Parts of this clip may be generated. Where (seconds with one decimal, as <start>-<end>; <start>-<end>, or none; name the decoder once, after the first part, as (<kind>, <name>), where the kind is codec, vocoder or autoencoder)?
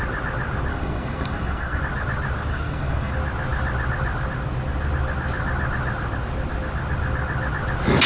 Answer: 0.7-1.8 (codec, SNAC); 2.5-3.1